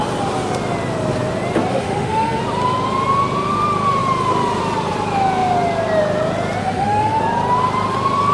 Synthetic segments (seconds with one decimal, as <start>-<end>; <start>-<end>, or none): 1.7-2.4; 6.6-7.2